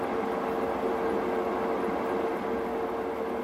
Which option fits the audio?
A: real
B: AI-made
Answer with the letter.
A